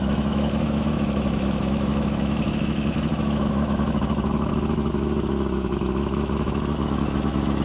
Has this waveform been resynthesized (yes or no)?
yes